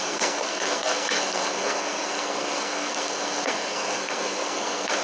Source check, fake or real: fake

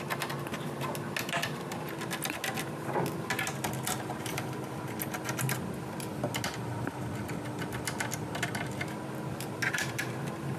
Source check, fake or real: real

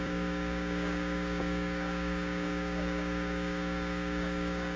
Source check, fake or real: fake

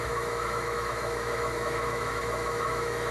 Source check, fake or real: fake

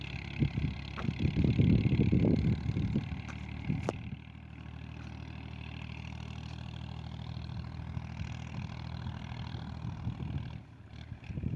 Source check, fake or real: real